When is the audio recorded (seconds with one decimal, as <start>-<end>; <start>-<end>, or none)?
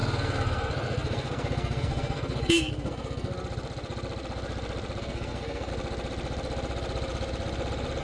3.3-5.0; 5.7-8.0